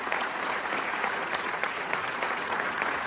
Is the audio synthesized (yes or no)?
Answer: yes